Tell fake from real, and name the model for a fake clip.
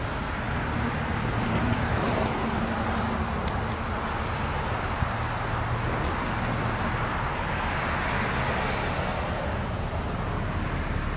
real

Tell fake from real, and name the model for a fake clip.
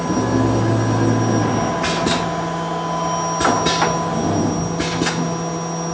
real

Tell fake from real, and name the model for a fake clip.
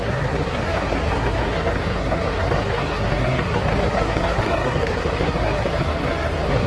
fake, codec, SNAC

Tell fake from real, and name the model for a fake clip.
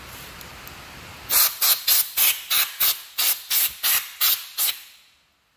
real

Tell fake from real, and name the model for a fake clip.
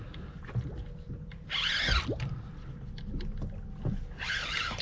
real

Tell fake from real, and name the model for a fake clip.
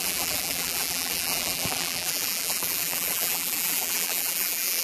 fake, vocoder, BigVGAN v2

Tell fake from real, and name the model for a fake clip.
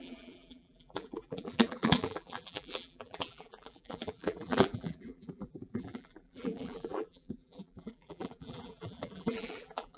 fake, vocoder, BigVGAN v2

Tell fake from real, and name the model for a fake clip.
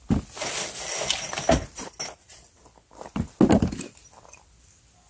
real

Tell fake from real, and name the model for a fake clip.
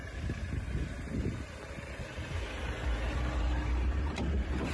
real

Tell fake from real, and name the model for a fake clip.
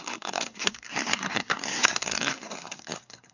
fake, codec, SNAC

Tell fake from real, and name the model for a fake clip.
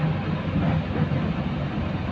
real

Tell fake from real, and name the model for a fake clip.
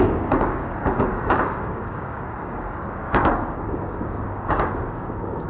fake, codec, DAC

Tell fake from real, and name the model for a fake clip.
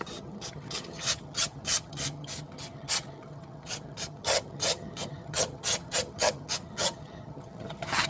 fake, vocoder, HiFi-GAN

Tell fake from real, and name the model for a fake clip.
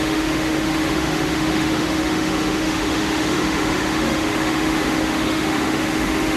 fake, autoencoder, DAC-VAE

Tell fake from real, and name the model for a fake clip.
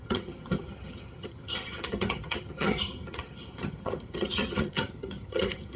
fake, vocoder, HiFi-GAN